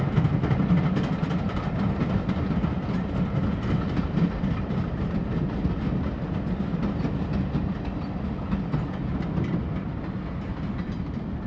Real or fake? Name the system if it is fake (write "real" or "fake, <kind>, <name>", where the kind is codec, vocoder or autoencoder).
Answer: real